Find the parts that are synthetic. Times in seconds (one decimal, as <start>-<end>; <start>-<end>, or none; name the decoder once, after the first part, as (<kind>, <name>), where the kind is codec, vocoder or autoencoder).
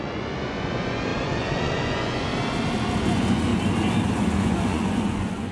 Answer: 0.0-2.3 (vocoder, Vocos); 3.0-3.5; 4.3-5.5